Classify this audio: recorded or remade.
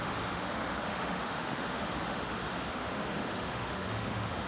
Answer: remade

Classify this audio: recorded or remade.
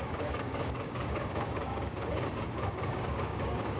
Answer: remade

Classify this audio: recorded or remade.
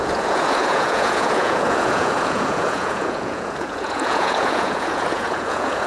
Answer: remade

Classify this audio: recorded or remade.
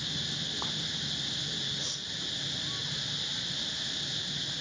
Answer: recorded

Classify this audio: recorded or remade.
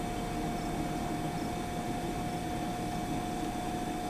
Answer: recorded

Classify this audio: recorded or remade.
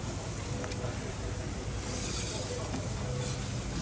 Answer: recorded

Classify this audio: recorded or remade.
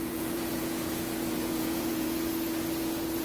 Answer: remade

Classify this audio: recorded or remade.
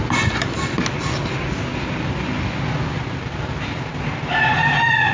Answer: recorded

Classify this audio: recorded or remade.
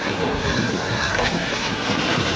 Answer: remade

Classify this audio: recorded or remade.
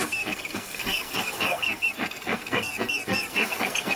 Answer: remade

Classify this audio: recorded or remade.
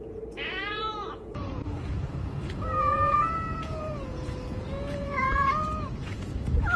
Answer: remade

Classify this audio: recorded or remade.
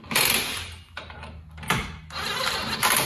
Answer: recorded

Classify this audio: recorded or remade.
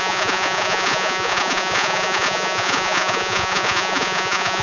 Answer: remade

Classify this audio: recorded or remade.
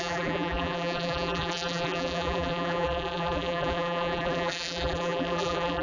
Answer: remade